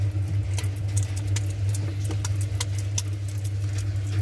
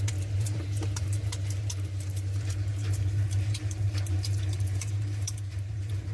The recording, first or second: first